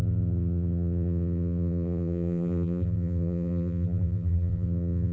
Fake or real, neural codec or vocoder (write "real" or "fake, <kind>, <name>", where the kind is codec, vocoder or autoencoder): fake, vocoder, BigVGAN v2